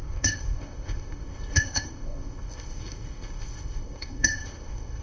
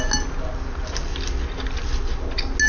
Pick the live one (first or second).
second